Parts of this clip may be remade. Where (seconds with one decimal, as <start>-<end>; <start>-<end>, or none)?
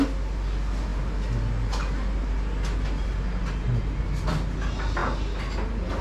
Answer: none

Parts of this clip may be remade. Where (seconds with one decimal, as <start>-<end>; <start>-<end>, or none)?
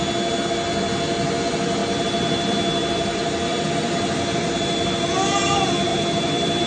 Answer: 1.8-5.0; 5.9-6.7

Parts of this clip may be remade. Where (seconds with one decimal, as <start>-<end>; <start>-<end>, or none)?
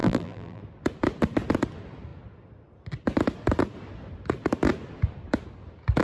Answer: 0.0-0.6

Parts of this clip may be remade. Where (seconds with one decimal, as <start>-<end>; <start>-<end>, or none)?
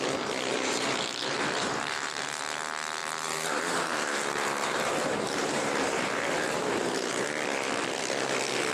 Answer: 0.5-2.4; 3.0-7.1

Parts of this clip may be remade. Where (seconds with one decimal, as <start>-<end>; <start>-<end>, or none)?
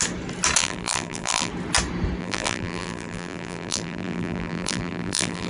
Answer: 0.6-1.5; 2.2-5.5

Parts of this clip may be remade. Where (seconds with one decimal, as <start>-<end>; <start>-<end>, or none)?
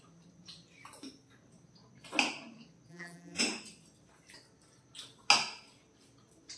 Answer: 2.9-3.4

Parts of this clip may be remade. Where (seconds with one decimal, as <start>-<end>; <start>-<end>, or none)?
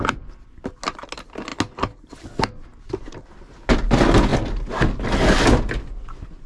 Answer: none